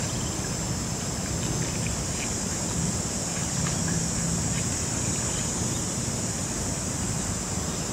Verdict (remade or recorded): recorded